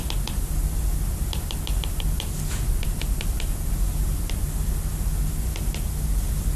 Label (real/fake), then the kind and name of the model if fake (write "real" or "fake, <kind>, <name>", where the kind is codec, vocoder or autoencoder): real